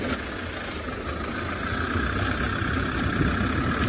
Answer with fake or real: real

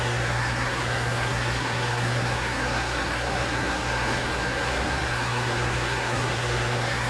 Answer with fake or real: fake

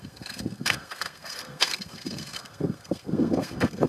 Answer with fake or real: fake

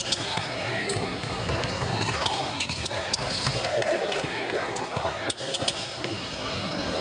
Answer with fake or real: fake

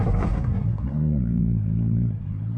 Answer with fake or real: fake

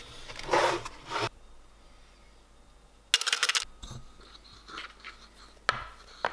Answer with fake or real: real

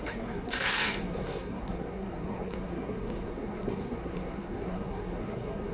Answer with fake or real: fake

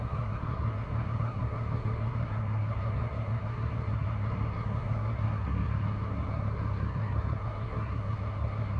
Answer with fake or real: fake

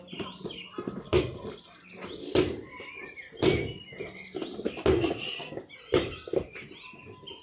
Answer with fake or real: real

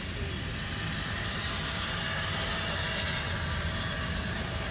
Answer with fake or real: real